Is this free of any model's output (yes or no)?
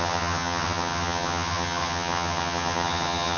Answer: no